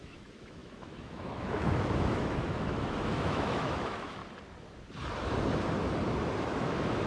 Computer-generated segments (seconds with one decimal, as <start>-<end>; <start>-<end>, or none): 0.0-4.2; 6.4-7.1